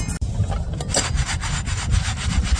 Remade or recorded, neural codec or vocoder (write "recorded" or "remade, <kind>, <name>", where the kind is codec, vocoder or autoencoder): recorded